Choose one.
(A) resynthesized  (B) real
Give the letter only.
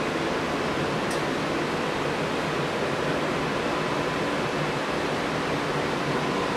B